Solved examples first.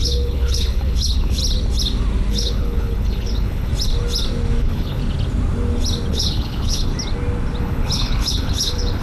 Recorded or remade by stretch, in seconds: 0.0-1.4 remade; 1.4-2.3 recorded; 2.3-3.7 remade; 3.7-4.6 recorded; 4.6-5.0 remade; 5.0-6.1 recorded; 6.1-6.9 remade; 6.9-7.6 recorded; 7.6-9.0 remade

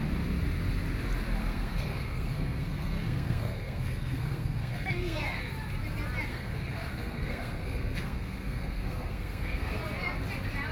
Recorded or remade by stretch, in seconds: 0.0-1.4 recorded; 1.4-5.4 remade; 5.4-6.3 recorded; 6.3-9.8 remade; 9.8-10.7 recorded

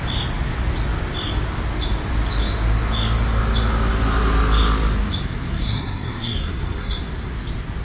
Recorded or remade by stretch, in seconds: 0.0-5.5 recorded; 5.5-7.0 remade; 7.0-7.8 recorded

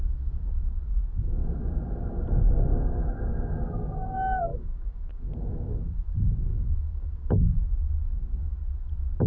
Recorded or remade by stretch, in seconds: 0.0-2.7 recorded; 2.7-3.5 remade; 3.5-4.5 recorded; 4.5-5.2 remade; 5.2-6.5 recorded; 6.5-7.6 remade; 7.6-9.3 recorded

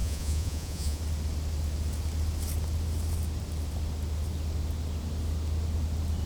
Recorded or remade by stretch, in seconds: 0.0-1.0 remade; 1.0-6.3 recorded